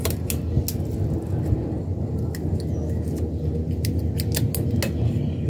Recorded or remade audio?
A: recorded